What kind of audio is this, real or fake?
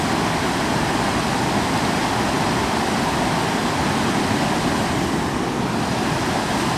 real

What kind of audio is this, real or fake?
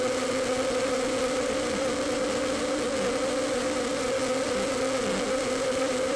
real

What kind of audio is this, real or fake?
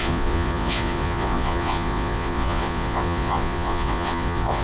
fake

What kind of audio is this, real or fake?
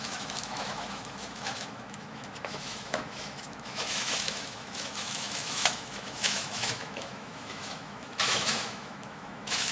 fake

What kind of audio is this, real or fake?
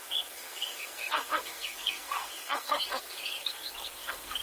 fake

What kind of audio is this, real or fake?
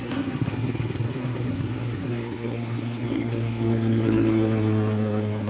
fake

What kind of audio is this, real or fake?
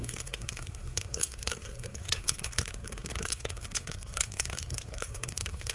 fake